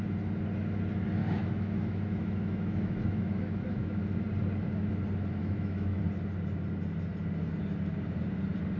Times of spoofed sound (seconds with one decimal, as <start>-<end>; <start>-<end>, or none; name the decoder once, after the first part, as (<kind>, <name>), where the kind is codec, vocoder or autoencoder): 1.2-4.0 (autoencoder, DAC-VAE); 5.4-6.0